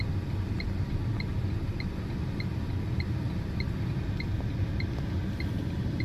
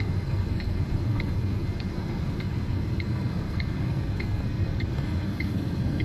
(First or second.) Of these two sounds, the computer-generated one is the second